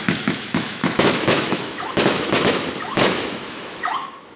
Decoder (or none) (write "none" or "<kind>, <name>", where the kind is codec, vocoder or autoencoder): autoencoder, DAC-VAE